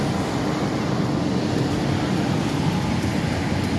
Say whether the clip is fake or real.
real